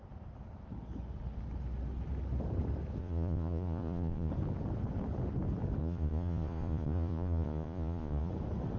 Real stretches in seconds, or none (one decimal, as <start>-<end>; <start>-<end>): 0.0-3.0; 4.3-5.8; 8.3-8.8

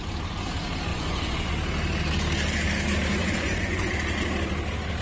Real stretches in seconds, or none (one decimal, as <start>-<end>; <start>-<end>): 0.0-0.9; 1.5-3.2; 3.9-5.0

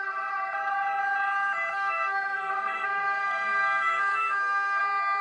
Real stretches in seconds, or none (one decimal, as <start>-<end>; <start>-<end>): 0.0-1.7; 4.8-5.2

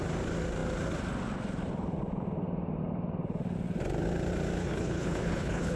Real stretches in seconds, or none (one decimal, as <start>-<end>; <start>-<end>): 0.0-4.6

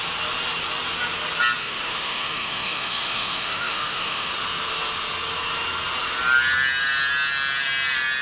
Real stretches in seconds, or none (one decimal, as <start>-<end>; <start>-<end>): 0.0-1.6; 4.3-8.2

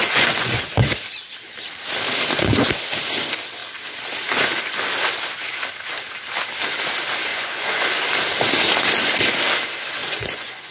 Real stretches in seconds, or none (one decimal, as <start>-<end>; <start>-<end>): 0.7-7.3; 8.0-10.0

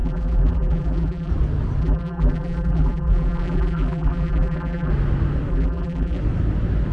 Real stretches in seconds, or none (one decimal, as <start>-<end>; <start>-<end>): 1.3-1.8; 4.9-5.5; 6.2-6.9

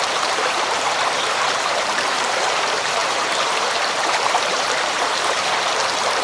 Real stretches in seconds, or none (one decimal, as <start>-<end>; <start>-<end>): none